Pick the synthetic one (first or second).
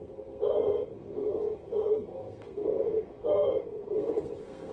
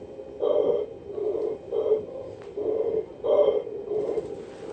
first